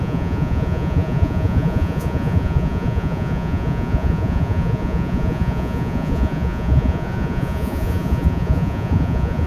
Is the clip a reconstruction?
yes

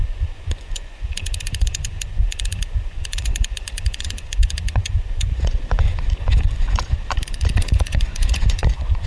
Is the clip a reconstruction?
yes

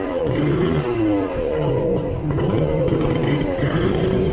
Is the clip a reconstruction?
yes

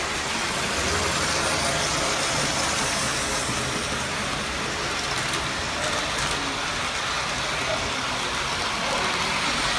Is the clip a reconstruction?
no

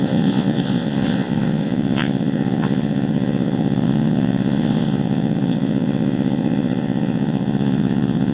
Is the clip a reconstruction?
yes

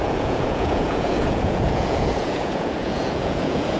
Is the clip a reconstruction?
yes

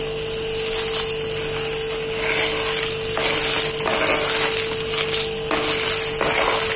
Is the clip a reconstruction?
no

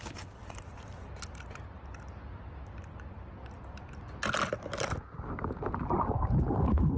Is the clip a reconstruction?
no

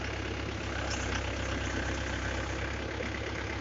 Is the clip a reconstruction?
no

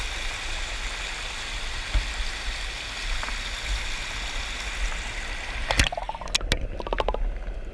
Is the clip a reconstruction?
no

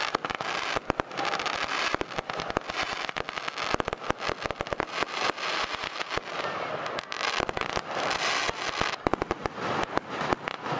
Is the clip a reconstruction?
no